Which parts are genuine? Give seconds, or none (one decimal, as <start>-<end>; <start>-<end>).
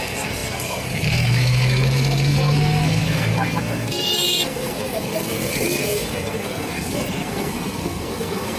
none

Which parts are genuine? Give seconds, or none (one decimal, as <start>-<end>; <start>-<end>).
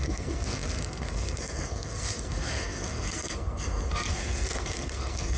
none